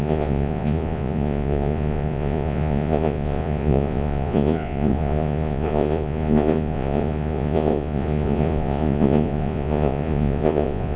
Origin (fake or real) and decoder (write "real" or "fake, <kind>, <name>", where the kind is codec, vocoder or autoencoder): fake, vocoder, Vocos